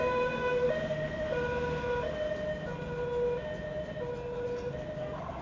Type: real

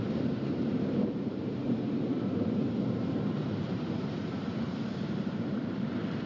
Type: fake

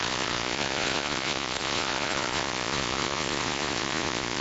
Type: fake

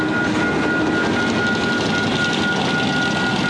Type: real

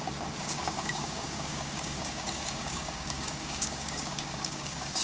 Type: fake